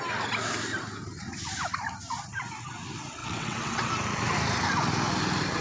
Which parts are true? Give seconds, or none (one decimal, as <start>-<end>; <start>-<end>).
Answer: 0.0-3.2; 3.9-5.6